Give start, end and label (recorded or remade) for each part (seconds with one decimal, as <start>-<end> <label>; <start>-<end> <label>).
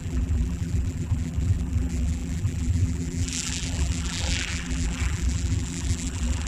0.0-6.5 remade